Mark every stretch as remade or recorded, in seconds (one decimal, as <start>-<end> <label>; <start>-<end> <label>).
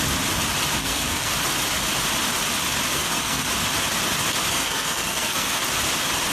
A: 0.0-0.8 recorded; 0.8-1.3 remade; 1.3-2.9 recorded; 2.9-3.5 remade; 3.5-4.5 recorded; 4.5-5.6 remade; 5.6-6.3 recorded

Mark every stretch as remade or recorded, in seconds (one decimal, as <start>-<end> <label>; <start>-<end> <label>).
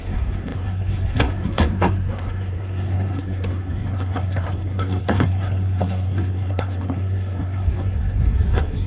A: 0.0-8.9 remade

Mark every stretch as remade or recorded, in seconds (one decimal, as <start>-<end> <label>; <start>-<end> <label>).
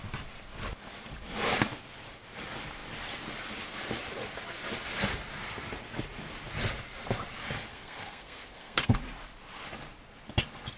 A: 0.0-7.7 recorded; 7.7-9.0 remade; 9.0-10.8 recorded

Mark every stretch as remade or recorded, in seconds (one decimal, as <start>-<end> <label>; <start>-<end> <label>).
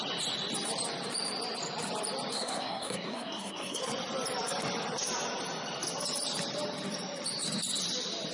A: 0.0-2.3 recorded; 2.3-3.8 remade; 3.8-8.3 recorded